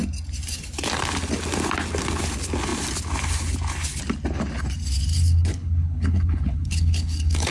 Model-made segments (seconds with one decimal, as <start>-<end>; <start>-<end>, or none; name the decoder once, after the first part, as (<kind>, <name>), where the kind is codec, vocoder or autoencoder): 5.1-7.5 (codec, HILCodec)